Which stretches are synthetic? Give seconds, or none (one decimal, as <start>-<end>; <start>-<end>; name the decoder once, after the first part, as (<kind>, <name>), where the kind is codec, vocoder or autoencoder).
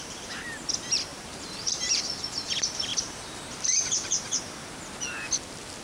1.1-2.0 (vocoder, BigVGAN v2); 2.9-4.8